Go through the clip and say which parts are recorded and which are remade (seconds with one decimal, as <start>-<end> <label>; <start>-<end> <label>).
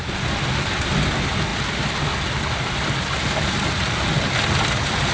0.0-5.1 recorded